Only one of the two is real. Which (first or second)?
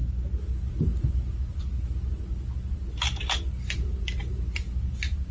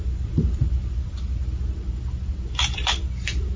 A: first